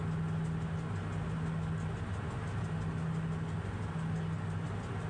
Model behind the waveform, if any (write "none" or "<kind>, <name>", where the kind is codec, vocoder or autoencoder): none